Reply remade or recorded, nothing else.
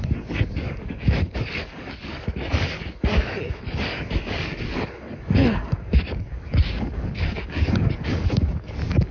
remade